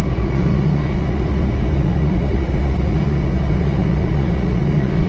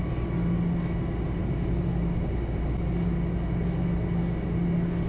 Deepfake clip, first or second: first